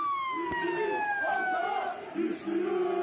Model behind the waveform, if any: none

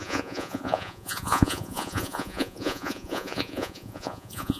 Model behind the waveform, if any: vocoder, Vocos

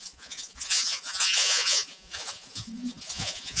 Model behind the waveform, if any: vocoder, Vocos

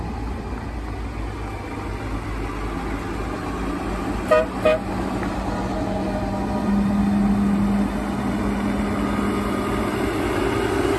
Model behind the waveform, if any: none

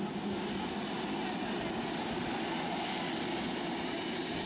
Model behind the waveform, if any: none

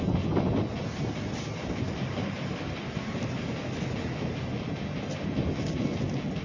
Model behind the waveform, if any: none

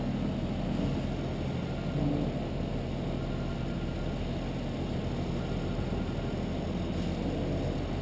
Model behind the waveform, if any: none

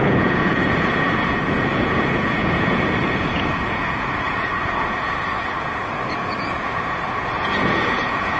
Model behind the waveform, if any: vocoder, Vocos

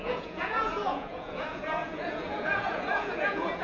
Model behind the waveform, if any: vocoder, Vocos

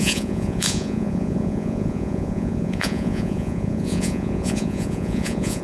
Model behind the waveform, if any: vocoder, Vocos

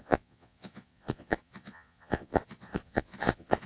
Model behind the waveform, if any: vocoder, Vocos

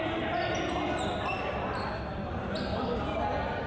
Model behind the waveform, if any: none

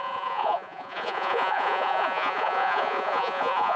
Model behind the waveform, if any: vocoder, Vocos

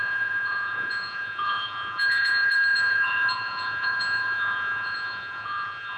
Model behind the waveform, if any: vocoder, Vocos